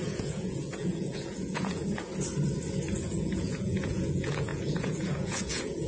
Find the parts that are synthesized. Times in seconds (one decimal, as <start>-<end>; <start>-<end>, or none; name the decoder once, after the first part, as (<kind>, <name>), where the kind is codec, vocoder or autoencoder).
0.0-1.8 (vocoder, Vocos); 3.0-5.9